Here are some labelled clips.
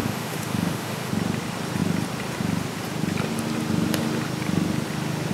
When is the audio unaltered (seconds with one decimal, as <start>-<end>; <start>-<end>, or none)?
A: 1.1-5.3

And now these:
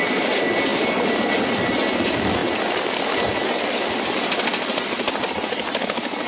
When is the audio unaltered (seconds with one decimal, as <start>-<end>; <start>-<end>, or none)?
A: 0.0-6.3

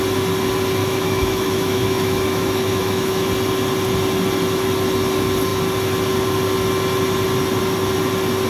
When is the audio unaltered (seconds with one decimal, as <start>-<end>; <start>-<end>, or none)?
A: 0.0-0.8; 3.3-8.5

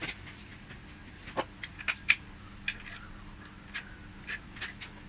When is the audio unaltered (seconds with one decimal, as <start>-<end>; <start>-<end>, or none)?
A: 0.0-5.1

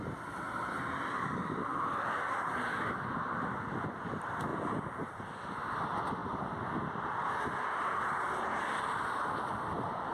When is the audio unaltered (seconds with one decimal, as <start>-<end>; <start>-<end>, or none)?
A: 0.0-10.1